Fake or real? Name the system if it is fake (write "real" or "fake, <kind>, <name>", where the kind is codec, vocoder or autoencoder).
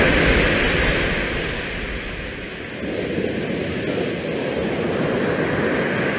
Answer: real